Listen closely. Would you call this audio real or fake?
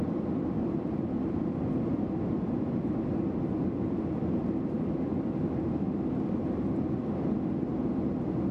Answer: real